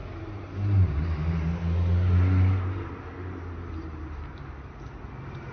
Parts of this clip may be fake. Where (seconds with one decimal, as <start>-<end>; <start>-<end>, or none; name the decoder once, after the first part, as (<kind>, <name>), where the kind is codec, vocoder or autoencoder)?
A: none